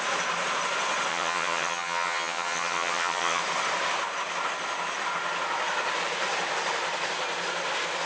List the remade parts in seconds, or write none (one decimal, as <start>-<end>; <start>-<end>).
1.1-3.4